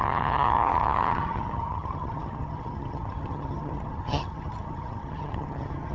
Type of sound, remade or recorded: remade